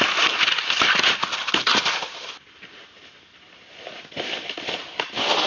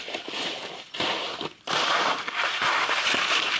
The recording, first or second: first